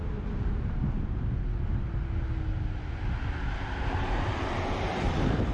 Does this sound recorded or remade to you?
recorded